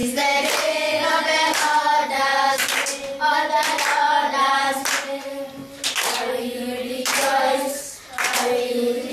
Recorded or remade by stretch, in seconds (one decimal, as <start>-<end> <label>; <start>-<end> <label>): 0.0-1.2 recorded; 1.2-2.3 remade; 2.3-4.5 recorded; 4.5-5.6 remade; 5.6-6.3 recorded; 6.3-9.1 remade